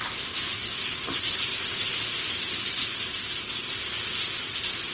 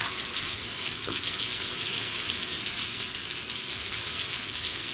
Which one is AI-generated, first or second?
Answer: second